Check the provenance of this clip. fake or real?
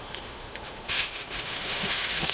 fake